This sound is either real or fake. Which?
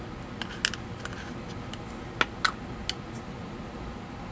real